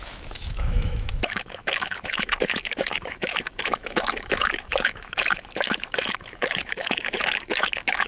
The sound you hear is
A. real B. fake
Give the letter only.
B